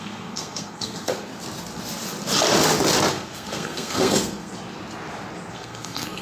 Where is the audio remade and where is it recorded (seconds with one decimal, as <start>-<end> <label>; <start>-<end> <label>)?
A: 0.0-1.3 remade; 1.3-3.1 recorded; 3.1-4.5 remade; 4.5-5.5 recorded; 5.5-6.2 remade